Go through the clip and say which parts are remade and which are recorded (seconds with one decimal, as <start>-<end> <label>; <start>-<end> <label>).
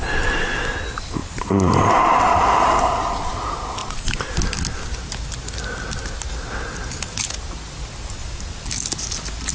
0.0-1.2 recorded; 1.2-2.2 remade; 2.2-3.8 recorded; 3.8-4.3 remade; 4.3-9.5 recorded